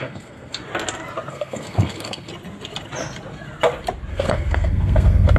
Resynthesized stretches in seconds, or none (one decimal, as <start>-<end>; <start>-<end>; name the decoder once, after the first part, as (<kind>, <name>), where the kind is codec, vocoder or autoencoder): 0.0-0.6 (codec, SNAC); 1.3-2.3; 4.1-5.4